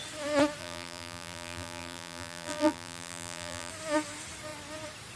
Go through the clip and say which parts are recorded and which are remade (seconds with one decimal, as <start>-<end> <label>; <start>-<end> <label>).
0.0-0.6 recorded; 0.6-3.7 remade; 3.7-5.2 recorded